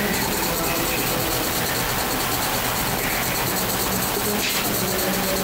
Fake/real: real